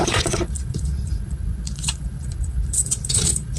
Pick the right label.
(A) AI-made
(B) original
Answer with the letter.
A